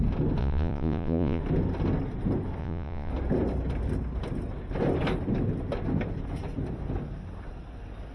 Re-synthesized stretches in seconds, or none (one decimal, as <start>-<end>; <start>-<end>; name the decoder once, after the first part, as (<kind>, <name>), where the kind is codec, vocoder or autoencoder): 0.4-1.4 (vocoder, Vocos); 2.6-3.1